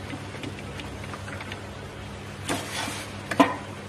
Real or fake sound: real